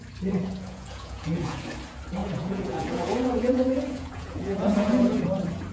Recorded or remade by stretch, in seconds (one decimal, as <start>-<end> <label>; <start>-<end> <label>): 0.0-0.4 recorded; 0.4-1.6 remade; 1.6-2.2 recorded; 2.2-5.2 remade; 5.2-5.7 recorded